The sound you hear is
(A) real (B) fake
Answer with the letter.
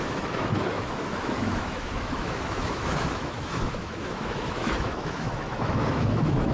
B